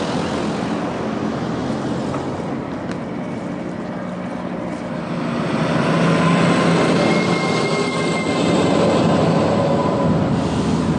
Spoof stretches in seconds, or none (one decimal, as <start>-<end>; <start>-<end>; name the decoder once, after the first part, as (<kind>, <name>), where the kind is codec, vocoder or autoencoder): none